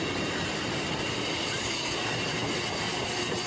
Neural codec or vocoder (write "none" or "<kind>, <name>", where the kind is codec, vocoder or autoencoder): none